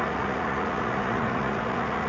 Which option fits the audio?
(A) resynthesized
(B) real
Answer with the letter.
A